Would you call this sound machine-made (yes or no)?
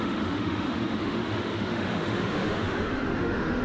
yes